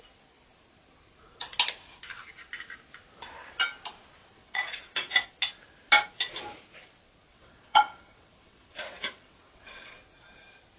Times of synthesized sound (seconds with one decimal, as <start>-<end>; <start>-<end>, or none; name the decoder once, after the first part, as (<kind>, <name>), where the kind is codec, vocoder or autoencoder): 4.2-5.3 (vocoder, WaveNeXt); 7.3-10.0